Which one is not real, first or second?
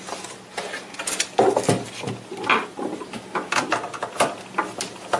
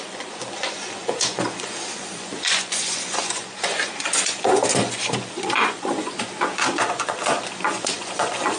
second